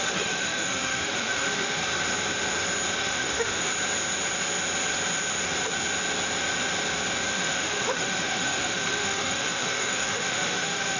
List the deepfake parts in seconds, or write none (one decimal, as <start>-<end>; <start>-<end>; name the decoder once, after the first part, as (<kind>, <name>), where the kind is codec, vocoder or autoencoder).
0.0-1.8 (autoencoder, DAC-VAE); 3.0-3.7; 7.3-11.0